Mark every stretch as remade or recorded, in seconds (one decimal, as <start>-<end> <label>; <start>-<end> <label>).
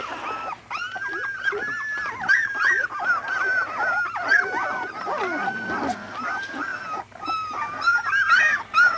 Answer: 0.0-9.0 recorded